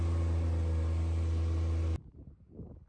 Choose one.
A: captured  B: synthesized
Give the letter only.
A